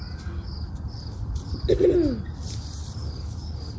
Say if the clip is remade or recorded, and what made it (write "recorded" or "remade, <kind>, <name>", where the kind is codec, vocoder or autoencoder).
recorded